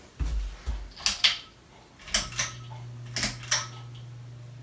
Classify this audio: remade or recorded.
recorded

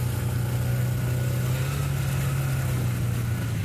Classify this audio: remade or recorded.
recorded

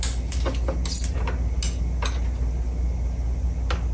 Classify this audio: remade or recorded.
recorded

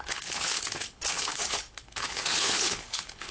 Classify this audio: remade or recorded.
remade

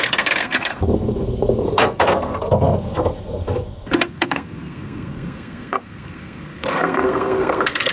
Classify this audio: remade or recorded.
remade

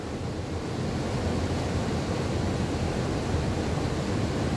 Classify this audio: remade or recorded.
recorded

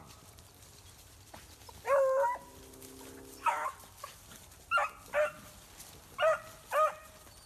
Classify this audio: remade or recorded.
recorded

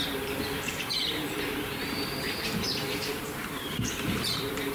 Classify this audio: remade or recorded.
remade